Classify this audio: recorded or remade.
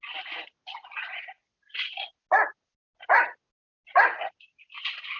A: recorded